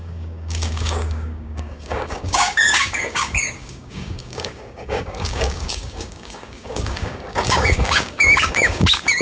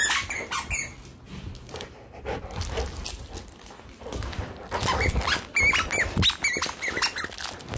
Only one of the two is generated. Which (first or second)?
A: first